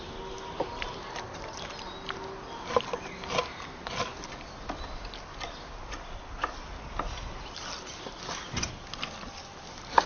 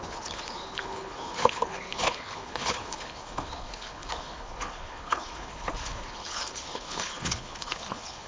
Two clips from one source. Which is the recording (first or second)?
first